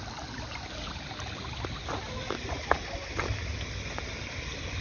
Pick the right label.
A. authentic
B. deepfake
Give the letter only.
A